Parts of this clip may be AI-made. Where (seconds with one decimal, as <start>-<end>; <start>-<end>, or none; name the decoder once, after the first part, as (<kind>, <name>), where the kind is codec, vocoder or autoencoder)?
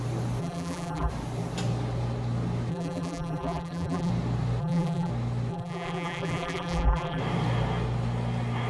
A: 0.4-1.1 (vocoder, BigVGAN v2); 2.7-4.1; 4.6-5.1; 5.5-7.2